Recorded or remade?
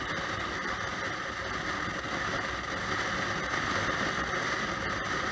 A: recorded